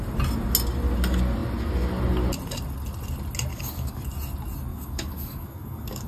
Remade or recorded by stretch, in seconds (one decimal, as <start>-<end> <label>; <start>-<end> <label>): 0.0-3.5 recorded; 3.5-4.0 remade; 4.0-4.7 recorded; 4.7-6.1 remade